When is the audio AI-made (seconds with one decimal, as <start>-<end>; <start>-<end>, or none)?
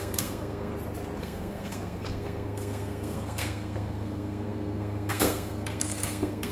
0.0-0.7; 1.2-6.5